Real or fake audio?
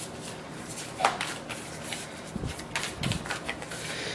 fake